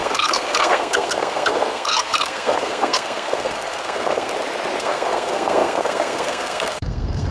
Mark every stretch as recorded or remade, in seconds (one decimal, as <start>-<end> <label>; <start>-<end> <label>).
0.0-4.3 remade; 4.3-4.8 recorded; 4.8-7.3 remade